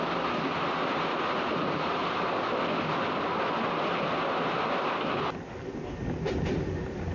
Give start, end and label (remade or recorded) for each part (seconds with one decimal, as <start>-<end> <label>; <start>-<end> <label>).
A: 0.0-7.1 recorded